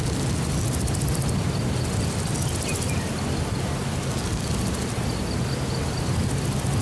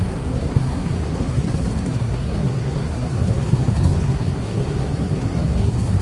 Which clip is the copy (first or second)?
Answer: second